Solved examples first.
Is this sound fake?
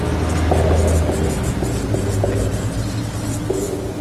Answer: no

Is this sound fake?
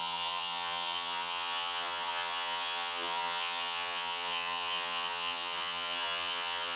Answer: yes